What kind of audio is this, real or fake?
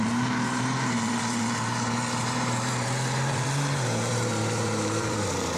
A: fake